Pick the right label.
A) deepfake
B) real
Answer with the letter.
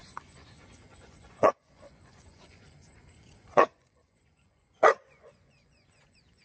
A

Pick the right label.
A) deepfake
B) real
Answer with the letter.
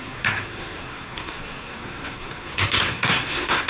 A